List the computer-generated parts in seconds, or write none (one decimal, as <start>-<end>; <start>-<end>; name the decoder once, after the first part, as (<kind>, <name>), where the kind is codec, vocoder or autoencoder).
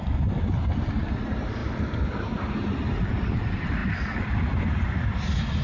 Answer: 0.0-5.6 (vocoder, BigVGAN v2)